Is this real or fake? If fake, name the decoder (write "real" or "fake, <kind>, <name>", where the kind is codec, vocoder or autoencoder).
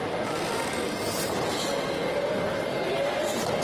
real